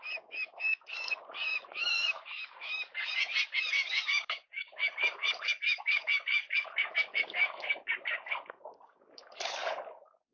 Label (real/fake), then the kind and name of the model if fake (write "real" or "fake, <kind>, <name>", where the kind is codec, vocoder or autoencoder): fake, codec, DAC